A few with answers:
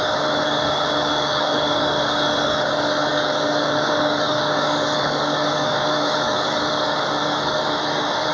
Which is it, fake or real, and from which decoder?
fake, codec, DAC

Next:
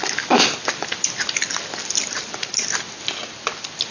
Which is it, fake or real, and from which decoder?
real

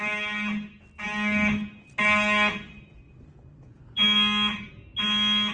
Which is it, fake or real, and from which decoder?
real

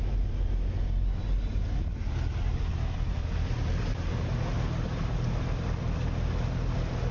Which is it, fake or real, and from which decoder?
real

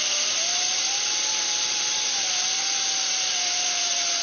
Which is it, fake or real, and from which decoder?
real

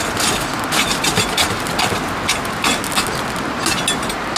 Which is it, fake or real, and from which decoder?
real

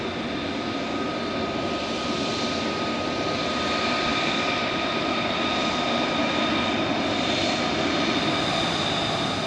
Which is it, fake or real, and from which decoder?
real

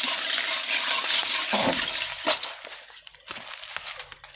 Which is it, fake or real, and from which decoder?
real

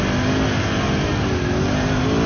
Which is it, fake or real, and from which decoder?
real